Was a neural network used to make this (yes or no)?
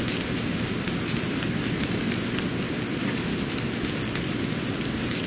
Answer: no